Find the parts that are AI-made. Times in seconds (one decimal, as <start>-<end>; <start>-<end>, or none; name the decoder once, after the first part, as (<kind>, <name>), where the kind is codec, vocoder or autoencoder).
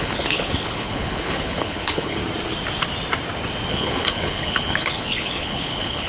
0.0-2.2 (codec, HILCodec); 3.7-6.1